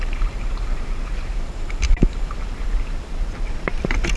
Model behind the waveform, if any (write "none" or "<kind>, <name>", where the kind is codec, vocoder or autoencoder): vocoder, BigVGAN v2